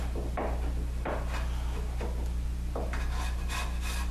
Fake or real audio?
real